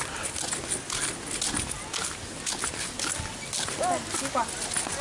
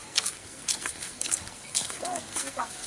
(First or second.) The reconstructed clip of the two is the second